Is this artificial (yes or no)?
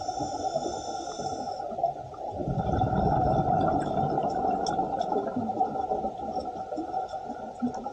yes